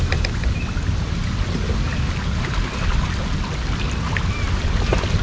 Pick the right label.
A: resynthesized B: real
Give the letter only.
B